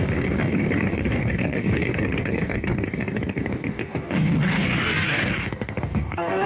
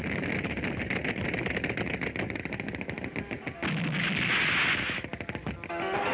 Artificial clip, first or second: first